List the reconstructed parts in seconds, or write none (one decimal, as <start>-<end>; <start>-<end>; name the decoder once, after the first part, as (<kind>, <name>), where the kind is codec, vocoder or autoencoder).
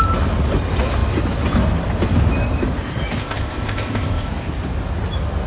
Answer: 3.2-4.3 (codec, ZipCodec)